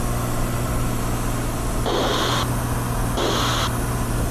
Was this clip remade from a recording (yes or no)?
no